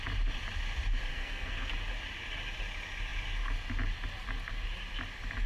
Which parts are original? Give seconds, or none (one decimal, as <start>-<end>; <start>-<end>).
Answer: 0.0-1.1; 1.7-5.5